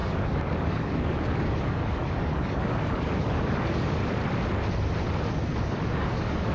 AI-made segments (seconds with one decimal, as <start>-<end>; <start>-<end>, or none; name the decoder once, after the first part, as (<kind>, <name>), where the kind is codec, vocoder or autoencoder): 0.0-4.0 (codec, DAC); 5.6-6.5